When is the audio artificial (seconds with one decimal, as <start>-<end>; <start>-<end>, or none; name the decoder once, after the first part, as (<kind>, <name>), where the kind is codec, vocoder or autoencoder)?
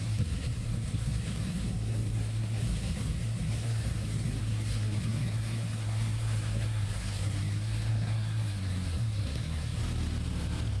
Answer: 0.0-9.8 (codec, SNAC)